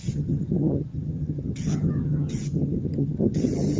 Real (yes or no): no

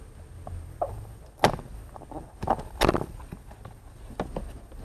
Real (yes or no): yes